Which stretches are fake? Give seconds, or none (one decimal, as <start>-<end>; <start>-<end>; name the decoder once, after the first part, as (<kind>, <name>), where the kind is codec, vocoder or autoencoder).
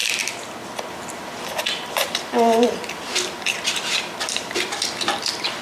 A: 1.3-4.7 (vocoder, BigVGAN v2)